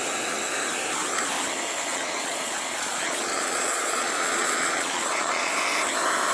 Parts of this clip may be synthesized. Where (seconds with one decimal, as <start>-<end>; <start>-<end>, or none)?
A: 1.9-5.5